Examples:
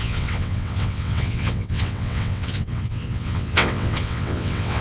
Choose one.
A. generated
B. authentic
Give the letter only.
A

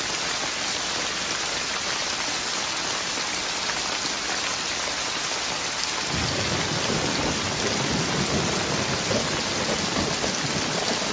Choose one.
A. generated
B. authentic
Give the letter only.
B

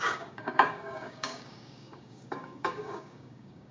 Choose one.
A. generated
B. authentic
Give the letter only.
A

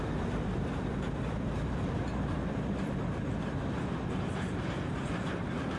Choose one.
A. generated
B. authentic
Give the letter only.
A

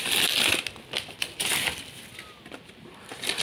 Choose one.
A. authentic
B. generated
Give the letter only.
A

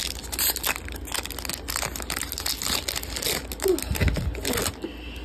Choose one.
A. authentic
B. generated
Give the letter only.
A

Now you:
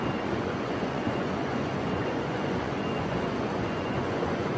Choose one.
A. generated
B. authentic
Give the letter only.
A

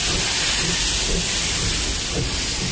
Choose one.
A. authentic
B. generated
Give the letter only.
A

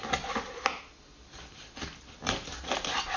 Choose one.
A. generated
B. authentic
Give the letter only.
B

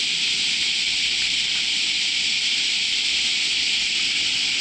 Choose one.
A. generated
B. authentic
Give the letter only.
B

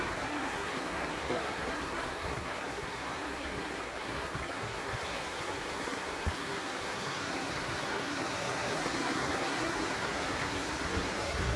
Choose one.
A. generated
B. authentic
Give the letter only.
A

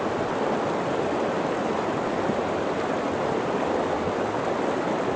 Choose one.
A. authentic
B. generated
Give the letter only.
A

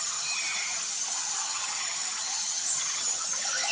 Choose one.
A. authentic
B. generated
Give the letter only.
B